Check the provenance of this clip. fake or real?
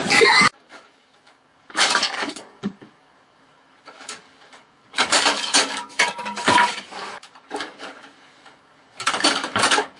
fake